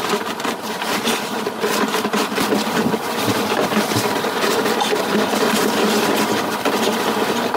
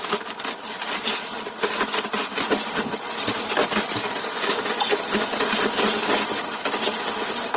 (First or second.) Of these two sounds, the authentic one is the second